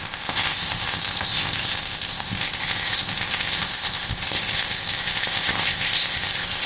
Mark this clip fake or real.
fake